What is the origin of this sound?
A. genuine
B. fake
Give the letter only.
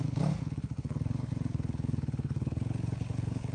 B